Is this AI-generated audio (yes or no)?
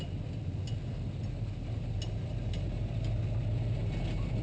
no